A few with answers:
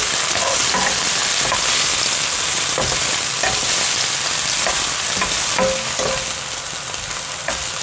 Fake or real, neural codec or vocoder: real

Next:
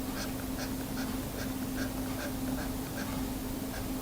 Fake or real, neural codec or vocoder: real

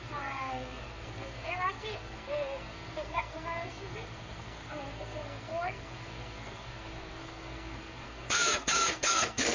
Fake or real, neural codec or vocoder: fake, codec, SNAC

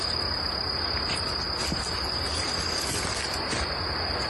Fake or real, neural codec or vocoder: real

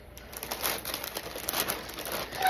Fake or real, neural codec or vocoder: real